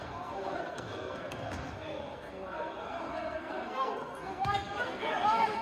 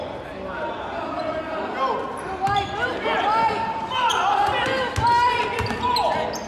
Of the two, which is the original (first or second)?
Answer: second